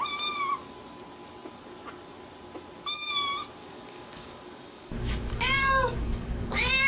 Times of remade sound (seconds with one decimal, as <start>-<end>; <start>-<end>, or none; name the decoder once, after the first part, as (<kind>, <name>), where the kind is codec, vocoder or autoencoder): 3.6-6.9 (codec, DAC)